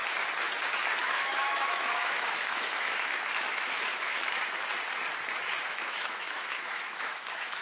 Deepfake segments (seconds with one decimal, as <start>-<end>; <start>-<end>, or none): 1.0-4.4; 5.7-7.6